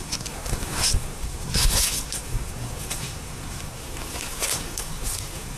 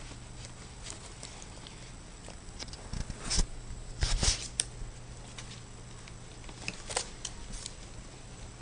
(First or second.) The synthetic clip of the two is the first